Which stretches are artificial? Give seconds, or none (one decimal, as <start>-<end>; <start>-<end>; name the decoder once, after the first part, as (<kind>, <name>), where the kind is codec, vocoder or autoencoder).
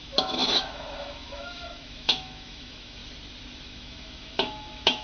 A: 0.0-3.0 (autoencoder, DAC-VAE); 3.6-5.0